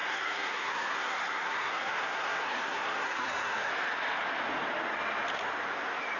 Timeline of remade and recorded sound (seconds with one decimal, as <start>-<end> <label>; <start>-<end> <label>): 0.0-3.7 remade; 3.7-6.2 recorded